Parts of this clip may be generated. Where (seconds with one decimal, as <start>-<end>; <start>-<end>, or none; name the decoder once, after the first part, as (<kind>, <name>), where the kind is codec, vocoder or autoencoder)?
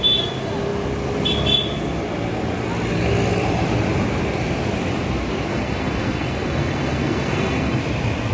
5.5-7.8 (codec, SNAC)